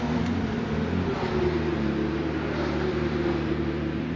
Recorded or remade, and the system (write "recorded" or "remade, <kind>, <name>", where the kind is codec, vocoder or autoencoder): recorded